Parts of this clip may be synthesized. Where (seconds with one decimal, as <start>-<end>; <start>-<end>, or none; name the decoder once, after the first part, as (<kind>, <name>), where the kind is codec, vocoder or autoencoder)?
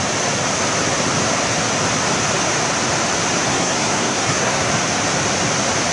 3.5-4.7 (codec, SNAC)